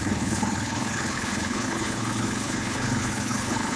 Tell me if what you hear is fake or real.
fake